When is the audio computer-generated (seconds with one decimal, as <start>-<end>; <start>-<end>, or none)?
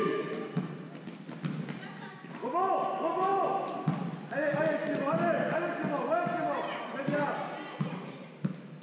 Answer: none